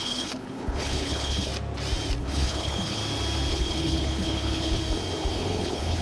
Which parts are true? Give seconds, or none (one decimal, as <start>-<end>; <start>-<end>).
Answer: 1.5-2.2; 3.0-3.5; 4.8-5.3